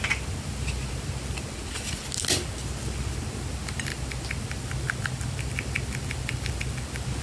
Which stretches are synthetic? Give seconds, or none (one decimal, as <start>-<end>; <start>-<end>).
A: none